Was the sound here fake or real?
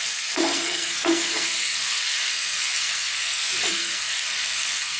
fake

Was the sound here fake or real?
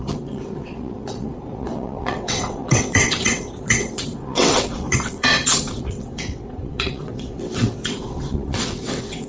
fake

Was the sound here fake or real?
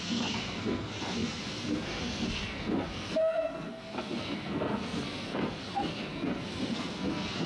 fake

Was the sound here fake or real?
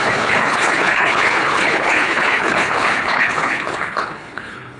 fake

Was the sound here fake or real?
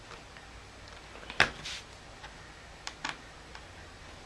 real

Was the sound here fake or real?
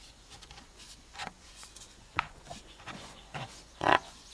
fake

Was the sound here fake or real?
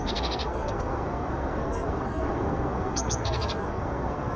fake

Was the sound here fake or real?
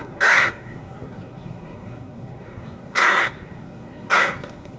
fake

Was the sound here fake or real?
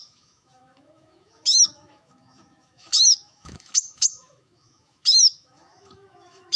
fake